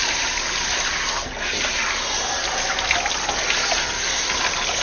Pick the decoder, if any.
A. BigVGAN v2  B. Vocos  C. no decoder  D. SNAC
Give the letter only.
C